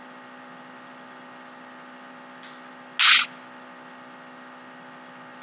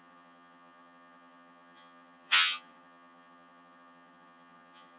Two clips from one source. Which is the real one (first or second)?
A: first